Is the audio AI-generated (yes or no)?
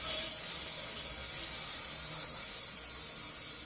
no